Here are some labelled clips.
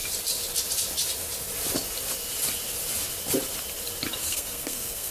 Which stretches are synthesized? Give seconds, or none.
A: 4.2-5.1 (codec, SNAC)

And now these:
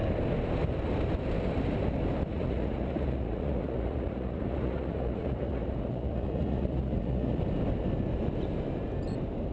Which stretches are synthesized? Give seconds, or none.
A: 2.3-7.4 (vocoder, Vocos)

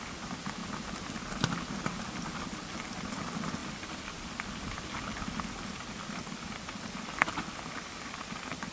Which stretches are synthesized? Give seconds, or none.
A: 5.1-7.2 (vocoder, BigVGAN v2)

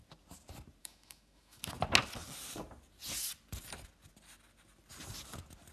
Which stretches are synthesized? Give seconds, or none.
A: 0.8-1.6 (autoencoder, DAC-VAE)

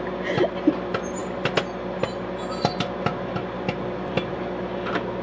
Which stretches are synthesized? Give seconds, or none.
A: none

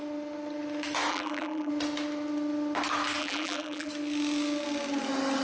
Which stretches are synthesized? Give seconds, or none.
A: 1.1-1.7 (vocoder, BigVGAN v2); 3.2-3.9